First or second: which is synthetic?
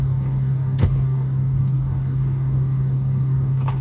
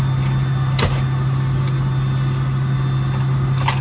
first